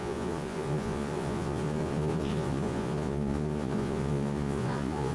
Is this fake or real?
fake